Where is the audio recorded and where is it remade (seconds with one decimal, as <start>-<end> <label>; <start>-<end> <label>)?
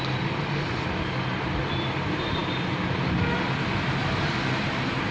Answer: 0.0-5.1 recorded